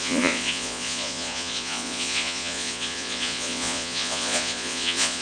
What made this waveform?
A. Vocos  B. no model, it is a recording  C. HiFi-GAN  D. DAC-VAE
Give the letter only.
A